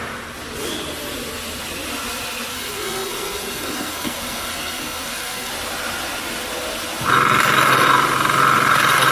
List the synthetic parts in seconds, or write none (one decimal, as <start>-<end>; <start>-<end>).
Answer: 2.5-5.5